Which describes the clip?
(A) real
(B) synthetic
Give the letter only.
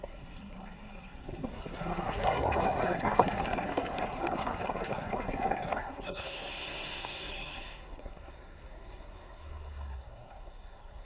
B